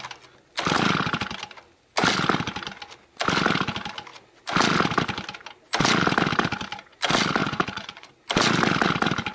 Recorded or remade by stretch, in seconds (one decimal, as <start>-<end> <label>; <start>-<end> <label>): 0.0-7.4 recorded; 7.4-8.1 remade; 8.1-9.3 recorded